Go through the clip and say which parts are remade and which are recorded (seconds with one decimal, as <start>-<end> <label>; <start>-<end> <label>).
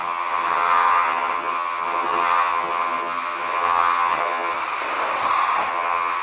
0.0-4.6 remade; 4.6-5.7 recorded; 5.7-6.2 remade